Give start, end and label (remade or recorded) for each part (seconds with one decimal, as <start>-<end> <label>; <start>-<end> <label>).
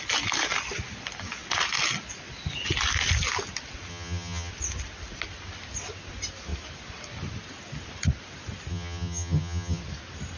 0.0-3.9 recorded; 3.9-4.5 remade; 4.5-8.7 recorded; 8.7-9.8 remade; 9.8-10.4 recorded